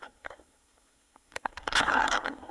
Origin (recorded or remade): remade